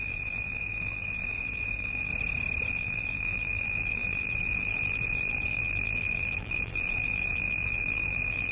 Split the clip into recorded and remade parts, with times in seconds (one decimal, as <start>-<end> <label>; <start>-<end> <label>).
0.0-2.1 remade; 2.1-2.7 recorded; 2.7-8.5 remade

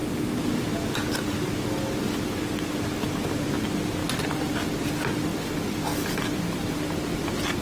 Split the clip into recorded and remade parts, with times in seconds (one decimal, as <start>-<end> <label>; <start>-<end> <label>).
0.0-4.0 recorded; 4.0-4.8 remade; 4.8-5.3 recorded; 5.3-7.6 remade

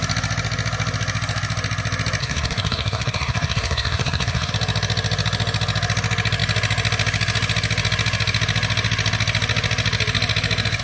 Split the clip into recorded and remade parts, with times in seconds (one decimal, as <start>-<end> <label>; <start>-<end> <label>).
0.0-2.2 recorded; 2.2-4.5 remade; 4.5-10.8 recorded